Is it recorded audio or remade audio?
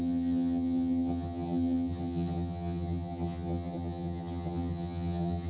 remade